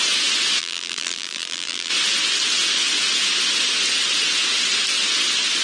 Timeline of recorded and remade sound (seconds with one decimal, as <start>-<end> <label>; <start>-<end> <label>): 0.0-0.6 recorded; 0.6-1.9 remade; 1.9-5.6 recorded